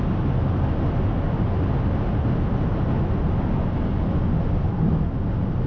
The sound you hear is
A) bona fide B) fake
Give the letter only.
A